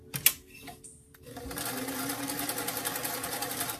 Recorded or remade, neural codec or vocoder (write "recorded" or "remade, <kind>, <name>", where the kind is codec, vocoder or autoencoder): recorded